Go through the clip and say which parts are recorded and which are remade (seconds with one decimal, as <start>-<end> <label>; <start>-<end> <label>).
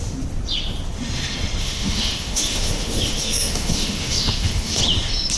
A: 0.0-1.6 recorded; 1.6-4.8 remade; 4.8-5.4 recorded